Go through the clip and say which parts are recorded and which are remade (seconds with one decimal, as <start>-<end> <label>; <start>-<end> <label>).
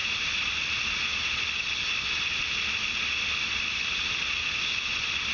0.0-5.3 recorded